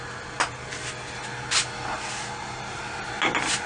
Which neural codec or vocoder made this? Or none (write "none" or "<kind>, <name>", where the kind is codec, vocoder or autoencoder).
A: none